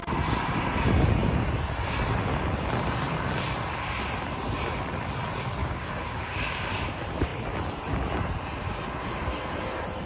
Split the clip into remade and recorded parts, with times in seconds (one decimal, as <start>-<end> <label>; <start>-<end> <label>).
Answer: 0.0-5.6 recorded; 5.6-6.7 remade; 6.7-10.1 recorded